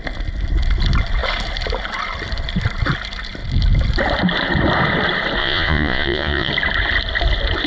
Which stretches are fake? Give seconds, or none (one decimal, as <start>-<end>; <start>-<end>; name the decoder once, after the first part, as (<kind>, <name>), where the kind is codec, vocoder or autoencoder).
5.4-6.5 (vocoder, Vocos)